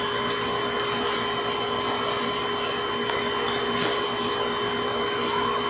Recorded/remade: recorded